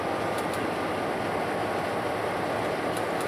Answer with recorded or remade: recorded